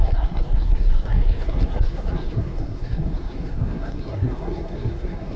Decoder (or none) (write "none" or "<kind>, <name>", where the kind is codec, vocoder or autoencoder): codec, SNAC